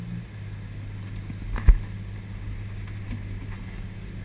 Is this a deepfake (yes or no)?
no